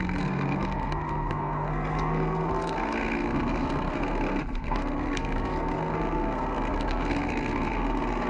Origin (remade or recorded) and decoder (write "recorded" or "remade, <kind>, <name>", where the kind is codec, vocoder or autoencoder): remade, codec, SNAC